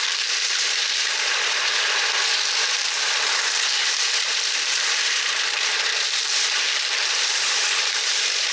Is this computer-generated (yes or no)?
yes